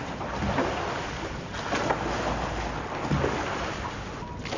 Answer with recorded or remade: recorded